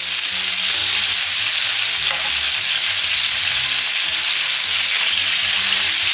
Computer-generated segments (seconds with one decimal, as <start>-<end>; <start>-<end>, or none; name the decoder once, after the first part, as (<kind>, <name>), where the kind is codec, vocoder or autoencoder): none